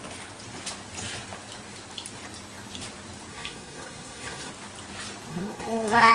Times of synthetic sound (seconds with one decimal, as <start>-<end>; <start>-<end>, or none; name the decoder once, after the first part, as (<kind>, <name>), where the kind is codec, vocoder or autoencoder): 3.3-4.5 (codec, SNAC); 5.3-6.1